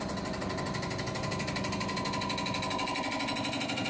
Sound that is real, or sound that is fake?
real